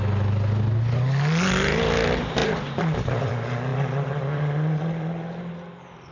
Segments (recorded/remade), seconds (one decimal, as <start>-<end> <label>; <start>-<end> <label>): 0.0-2.4 recorded; 2.4-3.3 remade; 3.3-6.1 recorded